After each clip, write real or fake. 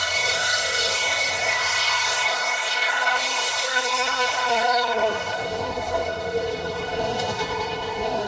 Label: fake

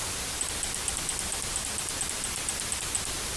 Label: fake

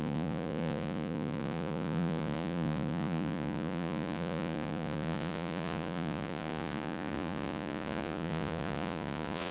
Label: fake